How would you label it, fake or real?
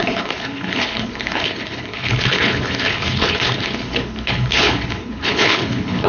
fake